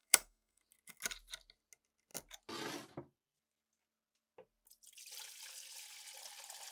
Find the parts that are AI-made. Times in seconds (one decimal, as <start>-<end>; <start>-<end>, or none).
0.0-0.6